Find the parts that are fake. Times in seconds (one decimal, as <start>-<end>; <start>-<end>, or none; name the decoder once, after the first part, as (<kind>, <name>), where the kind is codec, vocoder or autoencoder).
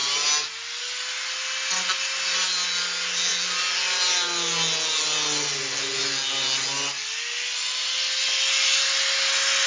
none